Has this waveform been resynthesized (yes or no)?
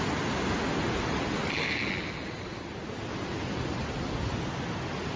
no